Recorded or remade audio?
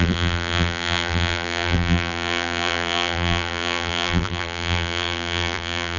remade